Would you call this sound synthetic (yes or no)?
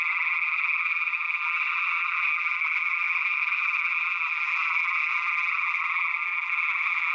yes